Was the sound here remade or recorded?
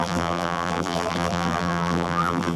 remade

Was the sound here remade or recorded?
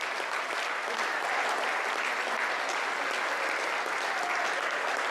recorded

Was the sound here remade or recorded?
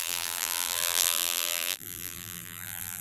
remade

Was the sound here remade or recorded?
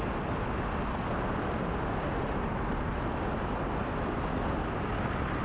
recorded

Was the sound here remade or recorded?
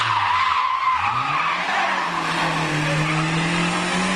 recorded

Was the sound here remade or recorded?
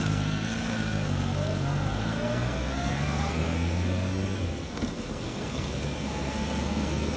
remade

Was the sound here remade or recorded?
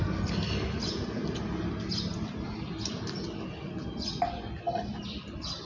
recorded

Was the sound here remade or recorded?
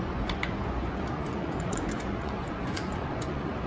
remade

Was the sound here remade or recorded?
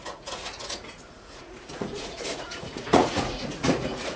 remade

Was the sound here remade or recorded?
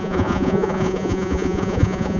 remade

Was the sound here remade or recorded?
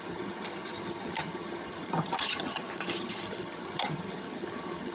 remade